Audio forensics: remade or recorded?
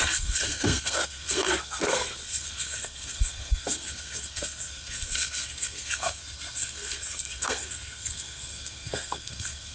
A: remade